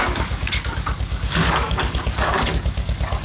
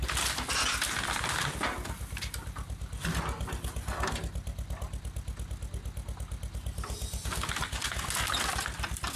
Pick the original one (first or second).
second